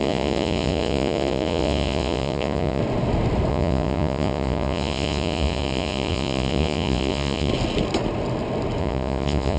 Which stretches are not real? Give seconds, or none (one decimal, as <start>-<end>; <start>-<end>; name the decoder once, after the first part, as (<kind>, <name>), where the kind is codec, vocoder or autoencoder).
0.0-2.8 (vocoder, Vocos); 3.5-7.5; 8.8-9.6